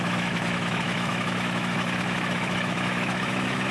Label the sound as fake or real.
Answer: fake